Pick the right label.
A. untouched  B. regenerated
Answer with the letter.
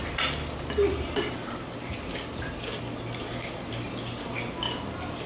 A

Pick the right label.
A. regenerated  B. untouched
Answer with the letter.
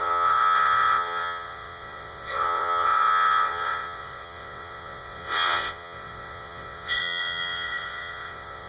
A